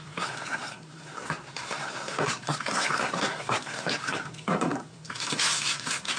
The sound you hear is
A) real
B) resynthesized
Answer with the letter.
B